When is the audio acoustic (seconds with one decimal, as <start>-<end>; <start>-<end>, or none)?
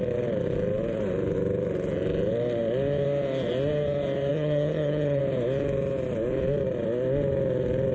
0.0-4.3; 5.2-7.9